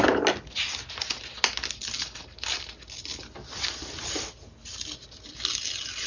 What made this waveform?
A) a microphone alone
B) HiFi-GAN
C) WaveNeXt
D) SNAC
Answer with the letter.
A